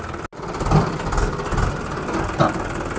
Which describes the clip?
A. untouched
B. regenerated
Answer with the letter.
A